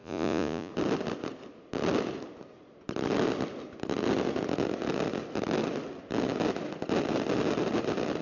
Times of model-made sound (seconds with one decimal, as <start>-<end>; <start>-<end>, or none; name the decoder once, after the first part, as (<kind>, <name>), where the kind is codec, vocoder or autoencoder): 0.0-0.7 (vocoder, Vocos)